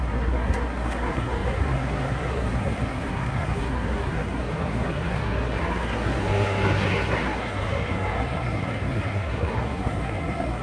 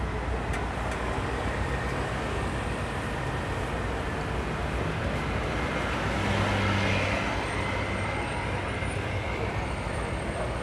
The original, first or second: second